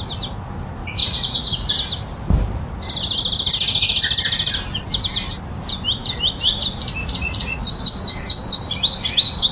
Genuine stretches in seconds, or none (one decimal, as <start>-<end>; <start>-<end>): 0.0-1.0; 1.7-7.0; 7.7-9.5